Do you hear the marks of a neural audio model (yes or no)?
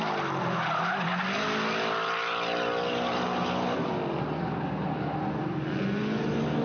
no